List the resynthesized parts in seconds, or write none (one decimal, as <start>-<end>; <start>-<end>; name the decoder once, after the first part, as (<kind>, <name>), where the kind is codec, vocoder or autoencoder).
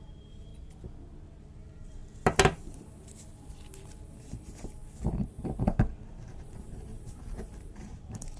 0.0-0.5 (vocoder, BigVGAN v2); 1.4-2.0; 3.9-4.8; 6.1-8.4